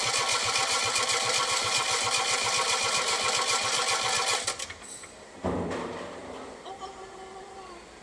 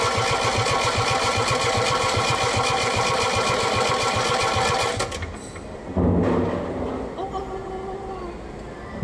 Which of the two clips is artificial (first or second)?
first